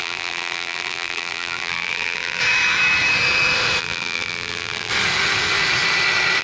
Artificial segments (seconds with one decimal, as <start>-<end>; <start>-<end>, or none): 0.0-2.4; 3.8-4.9